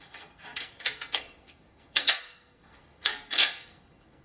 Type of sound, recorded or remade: remade